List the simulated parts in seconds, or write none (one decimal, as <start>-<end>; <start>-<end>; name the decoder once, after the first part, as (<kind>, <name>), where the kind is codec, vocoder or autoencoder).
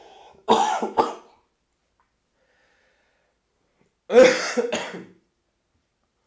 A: 0.0-1.0 (autoencoder, DAC-VAE)